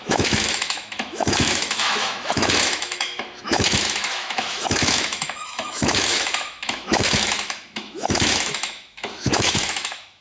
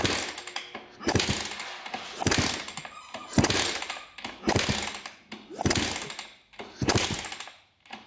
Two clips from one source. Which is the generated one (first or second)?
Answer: first